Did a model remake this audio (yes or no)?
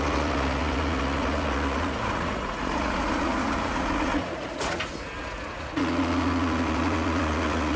yes